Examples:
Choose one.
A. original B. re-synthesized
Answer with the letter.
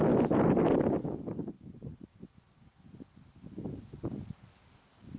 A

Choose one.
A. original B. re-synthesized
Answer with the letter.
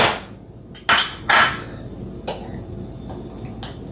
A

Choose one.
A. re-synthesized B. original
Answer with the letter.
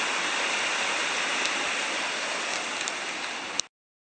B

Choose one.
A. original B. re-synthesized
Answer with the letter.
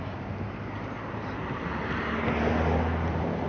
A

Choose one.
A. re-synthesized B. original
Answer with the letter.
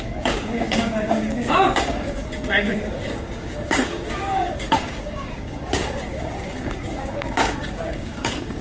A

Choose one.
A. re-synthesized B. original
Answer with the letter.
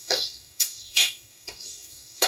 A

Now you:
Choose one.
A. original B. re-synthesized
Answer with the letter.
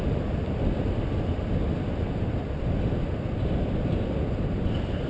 A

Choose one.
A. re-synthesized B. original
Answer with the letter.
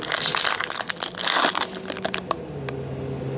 B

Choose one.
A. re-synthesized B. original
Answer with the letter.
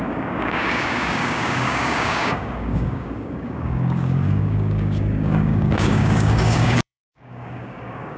A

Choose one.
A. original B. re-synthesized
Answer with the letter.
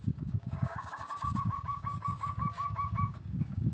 B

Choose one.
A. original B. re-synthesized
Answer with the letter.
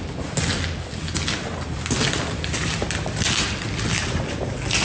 A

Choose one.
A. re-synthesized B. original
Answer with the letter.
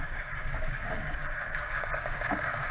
A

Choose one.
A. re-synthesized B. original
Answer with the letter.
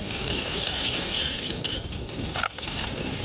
A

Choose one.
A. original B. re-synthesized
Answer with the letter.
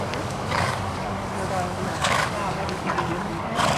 B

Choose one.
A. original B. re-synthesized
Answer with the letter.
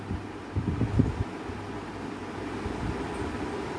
A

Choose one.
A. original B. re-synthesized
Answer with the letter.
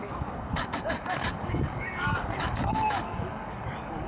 B